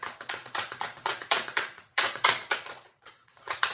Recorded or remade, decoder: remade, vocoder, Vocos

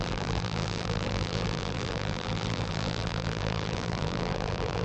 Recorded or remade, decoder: remade, vocoder, BigVGAN v2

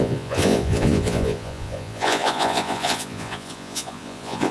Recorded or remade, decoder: remade, vocoder, Vocos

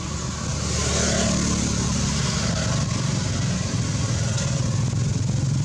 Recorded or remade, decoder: recorded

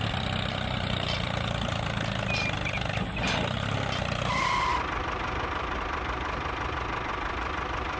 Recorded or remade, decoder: recorded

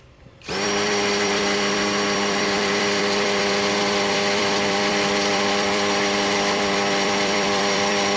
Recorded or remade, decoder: remade, vocoder, BigVGAN v2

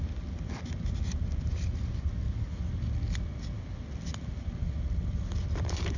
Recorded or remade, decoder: recorded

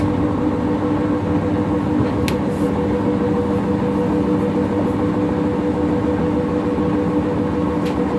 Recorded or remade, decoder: recorded